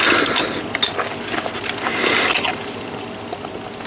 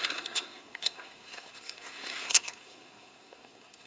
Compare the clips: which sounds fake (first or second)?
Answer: second